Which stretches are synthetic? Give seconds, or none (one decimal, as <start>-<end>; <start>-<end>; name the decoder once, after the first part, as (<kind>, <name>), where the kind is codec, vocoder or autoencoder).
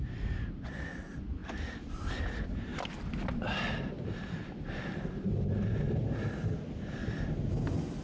none